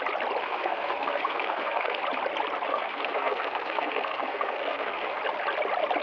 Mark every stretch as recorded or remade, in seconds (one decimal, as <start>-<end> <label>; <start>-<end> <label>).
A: 0.0-0.4 recorded; 0.4-2.0 remade; 2.0-2.7 recorded; 2.7-5.2 remade; 5.2-6.0 recorded